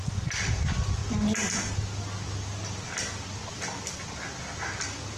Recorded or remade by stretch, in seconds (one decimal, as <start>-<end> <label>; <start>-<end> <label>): 0.0-5.2 recorded